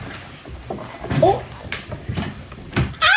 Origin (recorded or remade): recorded